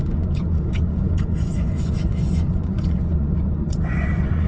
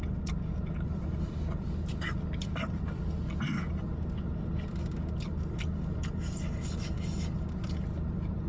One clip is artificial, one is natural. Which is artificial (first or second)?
first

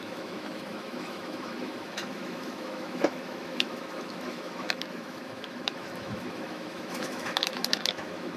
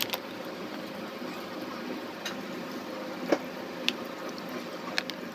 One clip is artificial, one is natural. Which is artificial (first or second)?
first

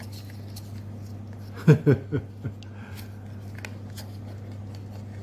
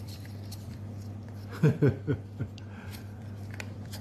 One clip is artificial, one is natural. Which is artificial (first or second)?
second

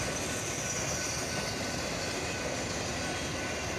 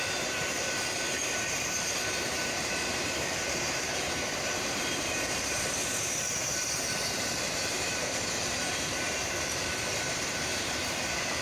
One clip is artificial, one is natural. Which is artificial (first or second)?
second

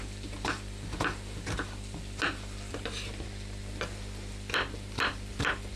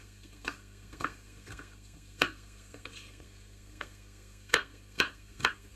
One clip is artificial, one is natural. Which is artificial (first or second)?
second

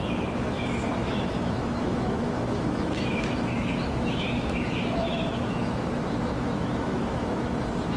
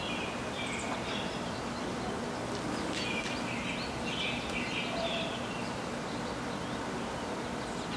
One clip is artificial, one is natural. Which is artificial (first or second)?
first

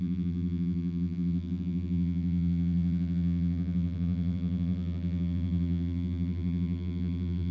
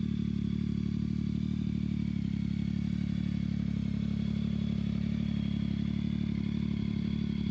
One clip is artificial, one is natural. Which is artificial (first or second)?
first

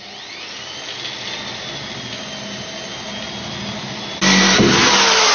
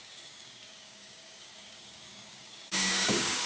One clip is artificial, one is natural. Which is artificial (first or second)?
second